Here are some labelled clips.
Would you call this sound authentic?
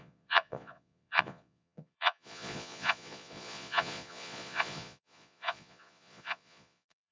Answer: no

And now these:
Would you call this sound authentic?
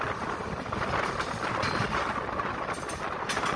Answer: yes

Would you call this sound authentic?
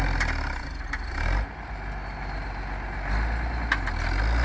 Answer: yes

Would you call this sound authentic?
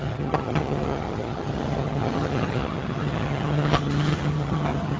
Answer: no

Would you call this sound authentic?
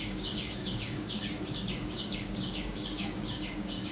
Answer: no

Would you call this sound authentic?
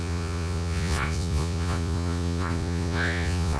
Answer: no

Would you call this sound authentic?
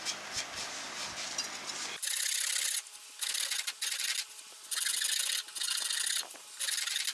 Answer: yes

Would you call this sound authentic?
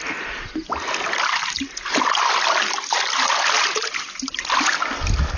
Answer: yes